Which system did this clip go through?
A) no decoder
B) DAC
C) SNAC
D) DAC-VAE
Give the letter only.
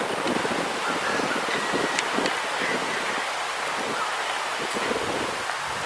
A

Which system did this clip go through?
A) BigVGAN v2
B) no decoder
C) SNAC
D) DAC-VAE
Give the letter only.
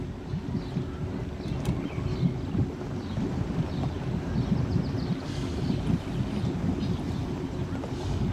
B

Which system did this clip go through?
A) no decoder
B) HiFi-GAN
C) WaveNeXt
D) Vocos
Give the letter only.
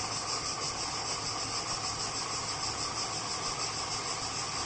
A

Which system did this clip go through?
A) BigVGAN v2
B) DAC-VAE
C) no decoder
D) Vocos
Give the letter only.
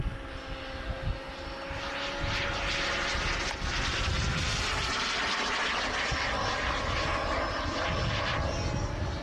C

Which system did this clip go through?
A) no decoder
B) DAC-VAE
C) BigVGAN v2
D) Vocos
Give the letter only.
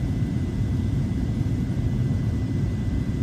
C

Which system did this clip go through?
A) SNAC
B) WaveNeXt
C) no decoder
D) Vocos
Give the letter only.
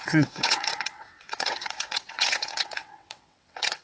B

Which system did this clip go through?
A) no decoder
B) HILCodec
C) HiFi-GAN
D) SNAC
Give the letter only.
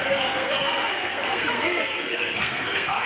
D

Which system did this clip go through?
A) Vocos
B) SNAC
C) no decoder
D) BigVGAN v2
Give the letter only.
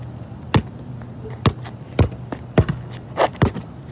C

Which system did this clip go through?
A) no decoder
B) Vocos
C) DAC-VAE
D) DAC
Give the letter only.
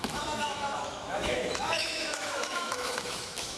C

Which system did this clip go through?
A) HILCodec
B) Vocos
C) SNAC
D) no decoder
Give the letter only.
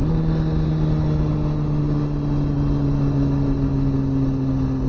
D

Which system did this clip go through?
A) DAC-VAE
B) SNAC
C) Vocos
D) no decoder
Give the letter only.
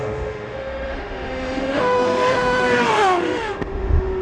A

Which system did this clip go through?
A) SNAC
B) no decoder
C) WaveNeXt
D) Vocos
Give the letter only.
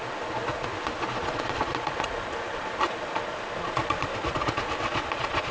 D